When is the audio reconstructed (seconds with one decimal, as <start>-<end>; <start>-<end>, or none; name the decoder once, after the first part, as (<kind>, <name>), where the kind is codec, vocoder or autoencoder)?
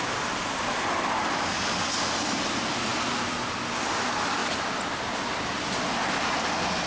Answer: none